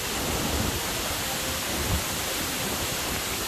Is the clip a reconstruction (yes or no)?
no